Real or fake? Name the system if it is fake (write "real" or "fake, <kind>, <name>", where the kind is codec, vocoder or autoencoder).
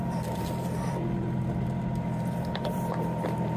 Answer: fake, vocoder, BigVGAN v2